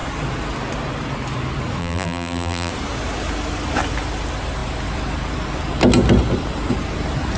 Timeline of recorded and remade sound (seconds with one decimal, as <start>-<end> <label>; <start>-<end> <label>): 0.0-1.8 recorded; 1.8-2.7 remade; 2.7-7.4 recorded